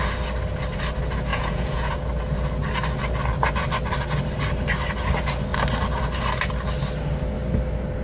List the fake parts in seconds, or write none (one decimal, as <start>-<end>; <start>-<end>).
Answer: 1.3-1.9